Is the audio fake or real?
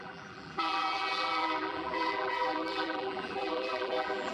fake